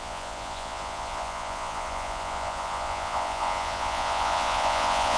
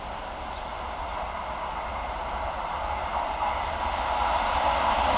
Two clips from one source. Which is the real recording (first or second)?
second